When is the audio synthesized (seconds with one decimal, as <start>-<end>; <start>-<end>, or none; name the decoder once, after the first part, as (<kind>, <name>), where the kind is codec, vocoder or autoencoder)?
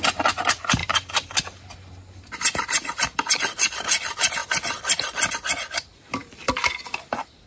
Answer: none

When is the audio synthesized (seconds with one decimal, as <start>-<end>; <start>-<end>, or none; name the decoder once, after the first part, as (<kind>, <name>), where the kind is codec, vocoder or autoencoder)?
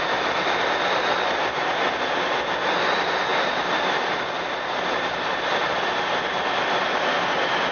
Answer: none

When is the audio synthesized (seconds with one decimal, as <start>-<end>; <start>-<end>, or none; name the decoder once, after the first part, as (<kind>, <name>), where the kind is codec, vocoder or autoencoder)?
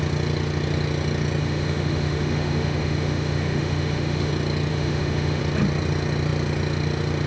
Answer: 1.4-4.3 (autoencoder, DAC-VAE); 4.7-5.4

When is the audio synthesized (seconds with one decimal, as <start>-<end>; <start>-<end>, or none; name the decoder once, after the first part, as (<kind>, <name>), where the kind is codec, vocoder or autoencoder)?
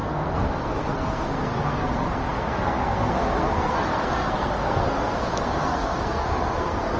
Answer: 0.0-7.0 (codec, SNAC)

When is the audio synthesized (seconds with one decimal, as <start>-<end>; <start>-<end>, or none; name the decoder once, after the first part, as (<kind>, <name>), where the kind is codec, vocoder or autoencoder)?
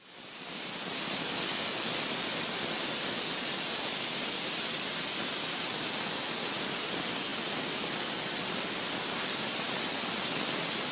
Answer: none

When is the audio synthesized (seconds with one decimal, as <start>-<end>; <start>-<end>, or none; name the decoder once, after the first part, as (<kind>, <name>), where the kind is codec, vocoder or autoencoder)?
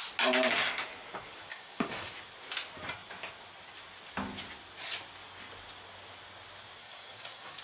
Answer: 1.5-2.1 (codec, DAC); 6.8-7.6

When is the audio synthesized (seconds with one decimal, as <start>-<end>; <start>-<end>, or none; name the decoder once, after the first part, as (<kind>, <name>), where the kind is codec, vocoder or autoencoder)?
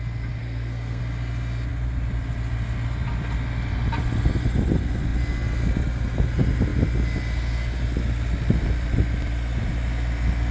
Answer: 0.4-1.0 (codec, SNAC)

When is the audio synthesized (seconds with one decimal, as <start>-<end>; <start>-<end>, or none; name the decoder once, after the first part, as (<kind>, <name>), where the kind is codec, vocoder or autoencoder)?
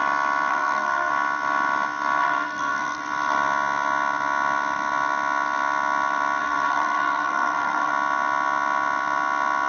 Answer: 0.5-1.1 (codec, SNAC); 2.2-3.0; 6.4-7.9